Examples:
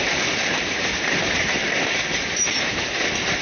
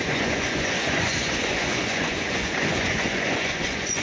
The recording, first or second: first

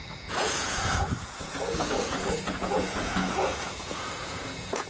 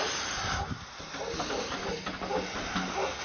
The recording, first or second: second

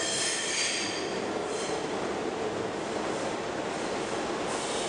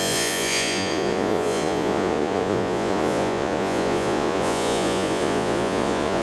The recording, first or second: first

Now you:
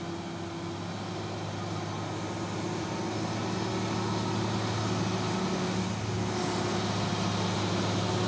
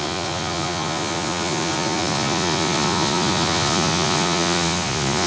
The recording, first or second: first